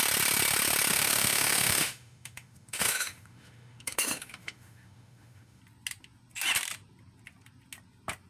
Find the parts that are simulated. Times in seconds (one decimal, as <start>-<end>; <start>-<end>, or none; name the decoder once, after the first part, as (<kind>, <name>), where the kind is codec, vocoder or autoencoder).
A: 0.9-5.6 (autoencoder, DAC-VAE)

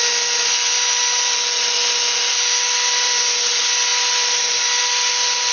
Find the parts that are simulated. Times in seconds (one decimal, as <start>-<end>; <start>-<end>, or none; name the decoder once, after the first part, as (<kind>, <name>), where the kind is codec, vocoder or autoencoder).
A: none

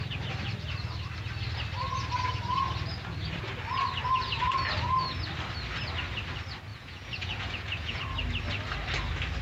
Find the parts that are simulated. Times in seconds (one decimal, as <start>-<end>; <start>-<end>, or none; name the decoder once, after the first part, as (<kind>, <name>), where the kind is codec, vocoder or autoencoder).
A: 6.7-8.0 (vocoder, Vocos)

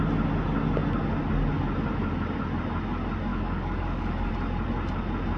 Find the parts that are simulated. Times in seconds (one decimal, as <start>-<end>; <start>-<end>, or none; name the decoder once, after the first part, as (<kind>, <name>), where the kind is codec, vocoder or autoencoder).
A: 3.3-4.3 (codec, DAC)